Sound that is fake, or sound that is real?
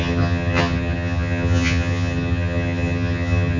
fake